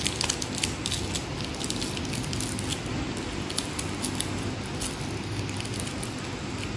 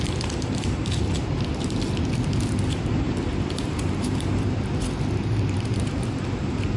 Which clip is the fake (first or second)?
second